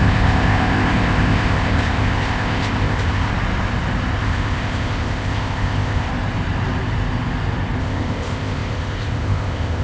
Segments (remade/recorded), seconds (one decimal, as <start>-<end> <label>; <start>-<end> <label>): 0.0-3.3 remade; 3.3-4.2 recorded; 4.2-6.1 remade; 6.1-7.8 recorded; 7.8-9.8 remade